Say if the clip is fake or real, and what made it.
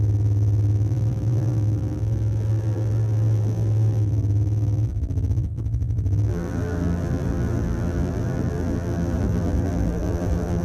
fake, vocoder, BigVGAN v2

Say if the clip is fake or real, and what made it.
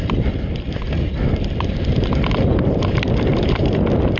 real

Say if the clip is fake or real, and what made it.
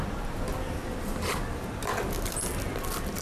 real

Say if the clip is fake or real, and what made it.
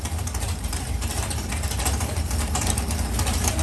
fake, vocoder, BigVGAN v2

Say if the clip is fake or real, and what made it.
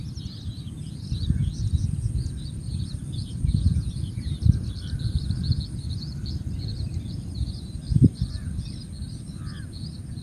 real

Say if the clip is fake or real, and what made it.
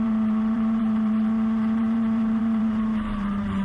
fake, vocoder, BigVGAN v2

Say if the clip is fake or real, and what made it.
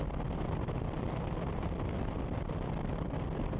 fake, vocoder, BigVGAN v2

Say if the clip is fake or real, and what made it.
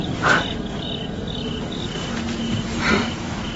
real